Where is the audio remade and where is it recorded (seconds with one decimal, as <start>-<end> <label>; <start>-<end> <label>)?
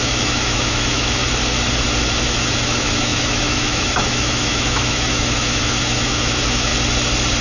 0.0-1.2 remade; 1.2-2.1 recorded; 2.1-6.7 remade; 6.7-7.4 recorded